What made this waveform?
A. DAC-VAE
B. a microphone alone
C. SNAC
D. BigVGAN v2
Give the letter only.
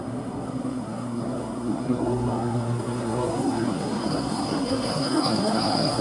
C